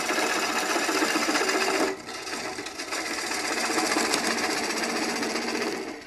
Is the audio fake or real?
real